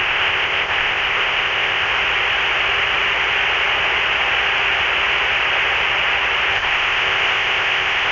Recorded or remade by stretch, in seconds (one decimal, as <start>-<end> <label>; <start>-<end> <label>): 0.0-1.9 remade; 1.9-6.5 recorded; 6.5-8.1 remade